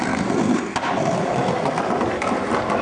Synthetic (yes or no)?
no